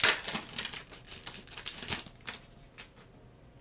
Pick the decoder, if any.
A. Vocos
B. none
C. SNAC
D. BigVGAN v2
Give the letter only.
B